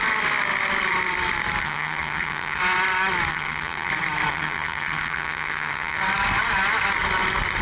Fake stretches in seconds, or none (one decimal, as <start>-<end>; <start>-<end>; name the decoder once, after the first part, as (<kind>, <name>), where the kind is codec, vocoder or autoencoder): 1.6-2.6 (vocoder, HiFi-GAN); 3.3-3.9; 4.3-6.0